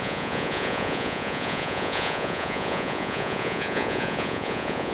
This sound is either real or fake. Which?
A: fake